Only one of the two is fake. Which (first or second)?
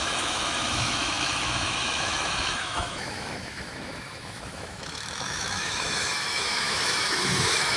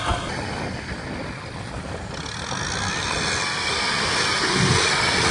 first